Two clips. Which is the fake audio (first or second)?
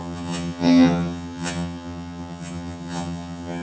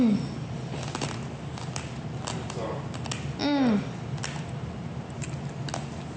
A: first